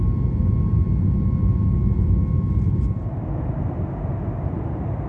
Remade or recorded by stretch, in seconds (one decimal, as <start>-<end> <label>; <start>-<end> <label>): 0.0-5.1 recorded